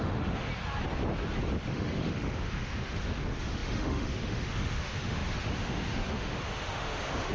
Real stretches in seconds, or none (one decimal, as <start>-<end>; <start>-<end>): 0.5-1.7